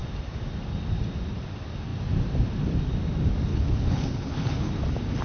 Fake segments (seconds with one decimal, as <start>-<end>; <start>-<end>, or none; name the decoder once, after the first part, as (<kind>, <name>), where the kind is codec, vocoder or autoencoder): 3.5-4.7 (codec, HILCodec)